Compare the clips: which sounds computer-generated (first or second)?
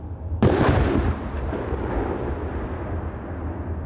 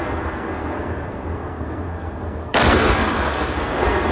second